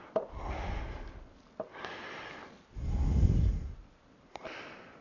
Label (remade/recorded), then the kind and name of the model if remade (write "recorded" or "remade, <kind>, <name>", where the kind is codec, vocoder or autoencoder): recorded